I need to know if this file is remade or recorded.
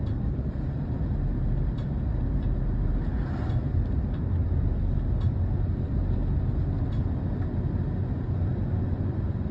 recorded